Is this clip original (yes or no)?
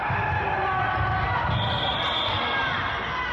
yes